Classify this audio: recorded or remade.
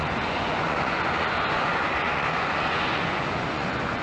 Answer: remade